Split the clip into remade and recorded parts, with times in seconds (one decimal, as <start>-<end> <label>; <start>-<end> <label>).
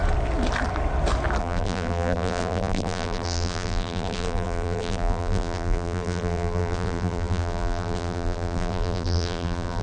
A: 0.0-1.4 recorded; 1.4-9.8 remade